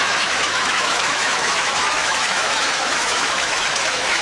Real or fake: fake